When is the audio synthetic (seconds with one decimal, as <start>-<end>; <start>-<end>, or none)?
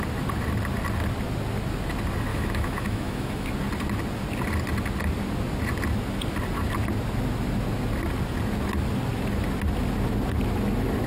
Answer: 2.3-3.5